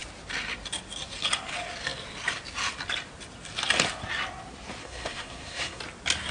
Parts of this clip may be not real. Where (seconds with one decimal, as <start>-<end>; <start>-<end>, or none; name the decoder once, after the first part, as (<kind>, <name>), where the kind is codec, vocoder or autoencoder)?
4.8-5.8 (codec, SNAC)